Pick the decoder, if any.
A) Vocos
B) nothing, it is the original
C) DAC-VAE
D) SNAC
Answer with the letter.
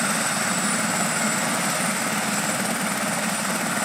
B